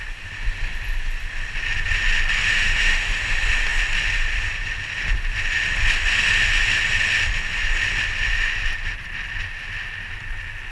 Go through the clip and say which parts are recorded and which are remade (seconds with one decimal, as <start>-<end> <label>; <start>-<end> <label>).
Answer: 0.0-2.4 recorded; 2.4-3.2 remade; 3.2-10.7 recorded